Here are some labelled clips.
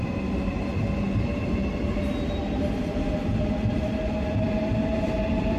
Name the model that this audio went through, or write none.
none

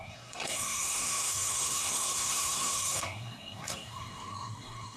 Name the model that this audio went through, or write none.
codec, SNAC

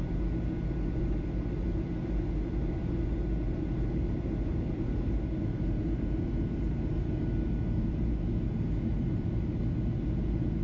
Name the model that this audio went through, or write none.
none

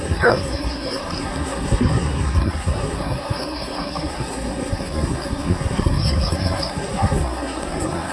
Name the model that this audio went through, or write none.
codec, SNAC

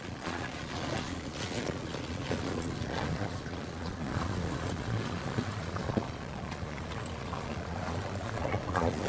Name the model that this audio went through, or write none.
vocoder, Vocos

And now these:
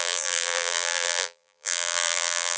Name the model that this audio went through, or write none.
vocoder, BigVGAN v2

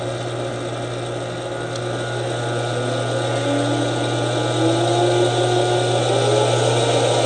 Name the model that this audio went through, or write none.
none